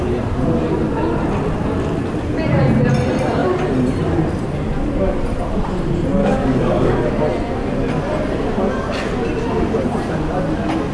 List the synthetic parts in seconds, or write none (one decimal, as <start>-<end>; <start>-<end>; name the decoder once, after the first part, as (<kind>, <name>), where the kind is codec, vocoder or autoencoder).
6.2-7.1 (codec, DAC)